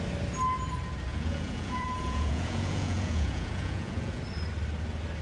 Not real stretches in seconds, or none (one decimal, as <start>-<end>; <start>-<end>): 1.1-4.2